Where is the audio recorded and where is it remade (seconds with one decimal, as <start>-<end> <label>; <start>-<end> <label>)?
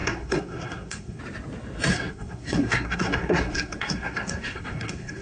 0.0-1.2 remade; 1.2-1.9 recorded; 1.9-5.2 remade